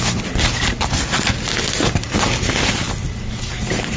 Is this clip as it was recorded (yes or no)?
yes